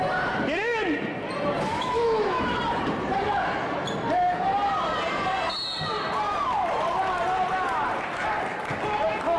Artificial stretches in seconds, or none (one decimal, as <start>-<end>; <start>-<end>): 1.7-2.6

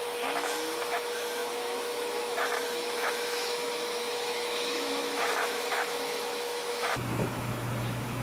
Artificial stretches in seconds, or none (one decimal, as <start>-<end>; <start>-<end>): 0.0-8.2

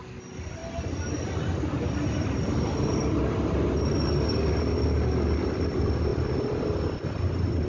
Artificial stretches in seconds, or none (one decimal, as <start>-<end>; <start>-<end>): none

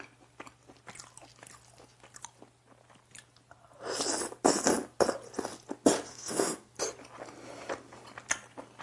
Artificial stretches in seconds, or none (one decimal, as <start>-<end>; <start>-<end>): 6.1-6.7